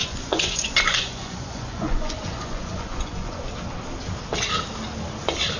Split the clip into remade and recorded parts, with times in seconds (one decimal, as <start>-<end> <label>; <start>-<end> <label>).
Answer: 0.0-3.4 remade; 3.4-5.6 recorded